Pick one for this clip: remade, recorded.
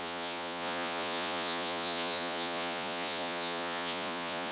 remade